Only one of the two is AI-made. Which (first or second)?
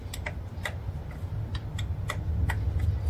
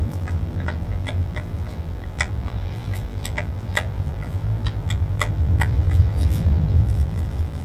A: second